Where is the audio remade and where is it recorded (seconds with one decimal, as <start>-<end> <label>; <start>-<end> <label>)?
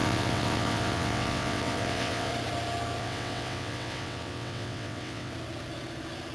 0.0-2.3 remade; 2.3-3.0 recorded; 3.0-5.3 remade; 5.3-6.3 recorded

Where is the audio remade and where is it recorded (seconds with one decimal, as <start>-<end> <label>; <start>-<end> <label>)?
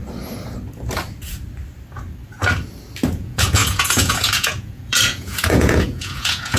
0.0-3.1 recorded; 3.1-6.6 remade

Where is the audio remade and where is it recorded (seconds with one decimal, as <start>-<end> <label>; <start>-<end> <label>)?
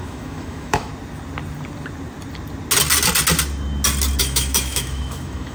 0.0-0.9 remade; 0.9-4.2 recorded; 4.2-5.5 remade